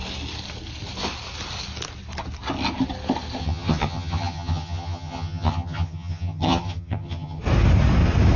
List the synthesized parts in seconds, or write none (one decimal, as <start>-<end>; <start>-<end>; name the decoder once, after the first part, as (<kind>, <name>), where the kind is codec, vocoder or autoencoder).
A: 3.4-7.4 (vocoder, HiFi-GAN)